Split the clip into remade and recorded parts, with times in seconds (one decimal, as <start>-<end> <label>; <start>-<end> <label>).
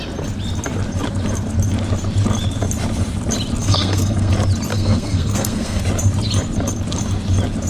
0.0-3.6 recorded; 3.6-4.3 remade; 4.3-4.7 recorded; 4.7-5.8 remade; 5.8-7.7 recorded